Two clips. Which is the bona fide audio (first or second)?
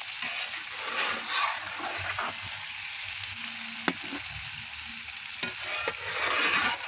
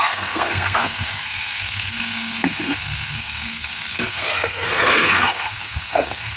first